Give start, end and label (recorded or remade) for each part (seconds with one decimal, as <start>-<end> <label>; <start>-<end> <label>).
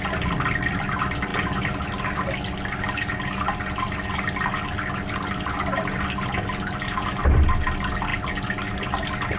0.0-9.4 recorded